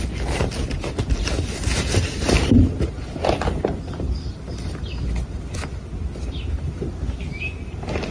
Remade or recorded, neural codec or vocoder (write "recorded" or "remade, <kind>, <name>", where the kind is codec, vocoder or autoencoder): recorded